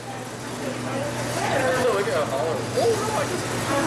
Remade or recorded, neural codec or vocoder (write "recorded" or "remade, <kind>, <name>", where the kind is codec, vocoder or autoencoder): recorded